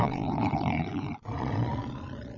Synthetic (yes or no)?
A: yes